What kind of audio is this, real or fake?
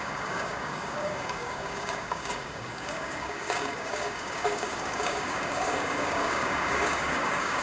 fake